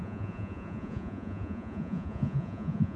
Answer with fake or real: fake